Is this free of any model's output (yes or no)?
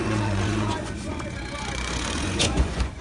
no